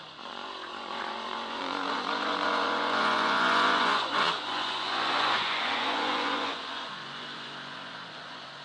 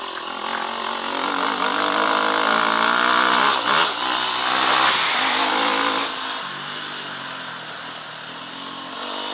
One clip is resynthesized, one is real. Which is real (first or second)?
second